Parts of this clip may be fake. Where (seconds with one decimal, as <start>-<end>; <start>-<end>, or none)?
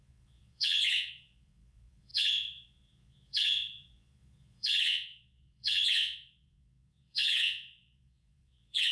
0.0-8.9